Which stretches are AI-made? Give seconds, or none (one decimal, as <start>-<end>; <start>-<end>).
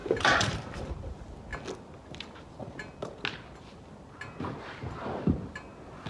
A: 0.0-0.8